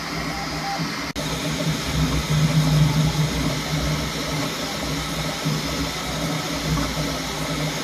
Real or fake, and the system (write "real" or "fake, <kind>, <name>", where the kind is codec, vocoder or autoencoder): real